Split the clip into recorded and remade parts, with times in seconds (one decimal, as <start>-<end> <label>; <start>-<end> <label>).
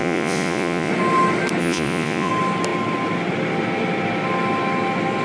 0.0-0.9 remade; 0.9-1.6 recorded; 1.6-2.3 remade; 2.3-5.2 recorded